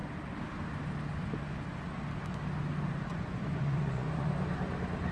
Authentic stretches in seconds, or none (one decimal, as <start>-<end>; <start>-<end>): 0.0-3.1; 4.3-5.1